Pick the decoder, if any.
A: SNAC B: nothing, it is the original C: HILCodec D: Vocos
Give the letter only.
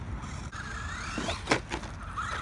B